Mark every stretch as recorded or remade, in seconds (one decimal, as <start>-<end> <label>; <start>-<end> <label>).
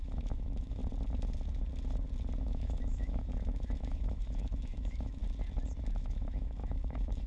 0.0-0.8 remade; 0.8-2.4 recorded; 2.4-5.2 remade; 5.2-5.9 recorded; 5.9-7.3 remade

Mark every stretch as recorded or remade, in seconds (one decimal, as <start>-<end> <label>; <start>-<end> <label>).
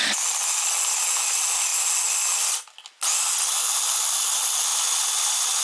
0.0-5.6 recorded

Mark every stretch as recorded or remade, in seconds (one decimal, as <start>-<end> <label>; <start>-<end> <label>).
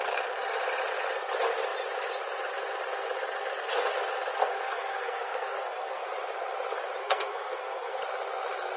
0.0-4.4 recorded; 4.4-6.0 remade; 6.0-7.0 recorded; 7.0-8.0 remade; 8.0-8.8 recorded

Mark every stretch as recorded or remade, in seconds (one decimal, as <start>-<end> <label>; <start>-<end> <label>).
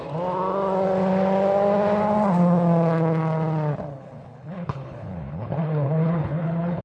0.0-3.9 recorded; 3.9-6.8 remade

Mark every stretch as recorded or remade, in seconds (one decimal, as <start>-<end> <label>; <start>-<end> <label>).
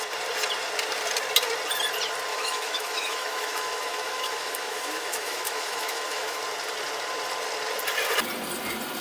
0.0-2.3 recorded; 2.3-6.4 remade; 6.4-9.0 recorded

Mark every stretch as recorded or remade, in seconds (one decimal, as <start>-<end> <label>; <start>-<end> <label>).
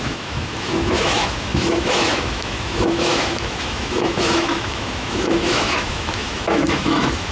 0.0-7.3 remade